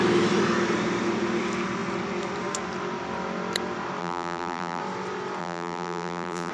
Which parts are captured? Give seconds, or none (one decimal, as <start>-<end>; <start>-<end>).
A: 0.0-4.0; 4.8-5.4